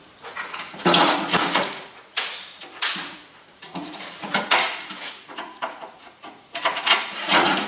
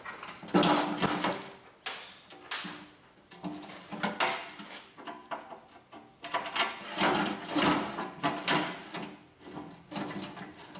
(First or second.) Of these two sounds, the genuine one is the second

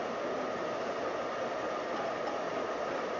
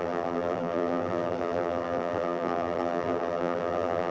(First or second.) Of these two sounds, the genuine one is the first